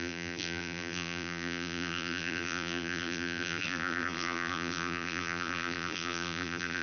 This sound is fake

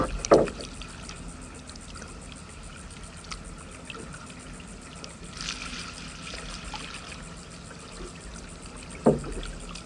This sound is real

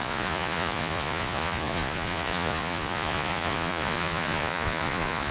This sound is fake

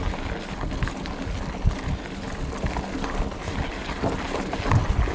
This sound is real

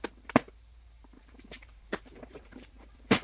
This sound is fake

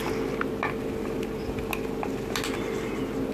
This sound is real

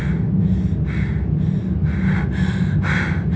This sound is real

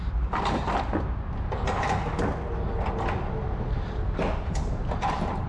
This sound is real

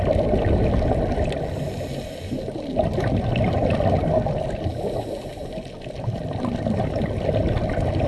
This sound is real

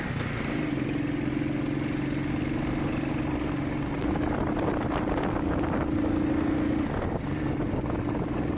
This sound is real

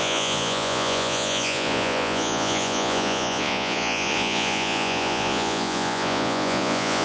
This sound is fake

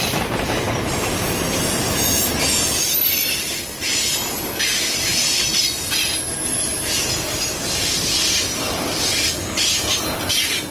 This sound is real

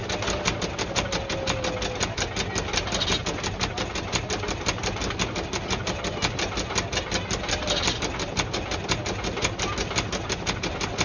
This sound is real